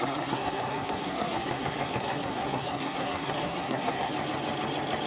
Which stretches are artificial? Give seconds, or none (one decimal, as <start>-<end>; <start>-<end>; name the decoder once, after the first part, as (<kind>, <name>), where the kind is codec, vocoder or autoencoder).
0.0-4.1 (codec, SNAC)